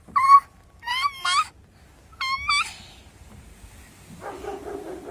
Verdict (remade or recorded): recorded